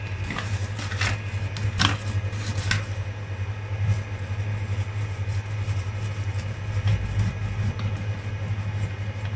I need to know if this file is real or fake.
real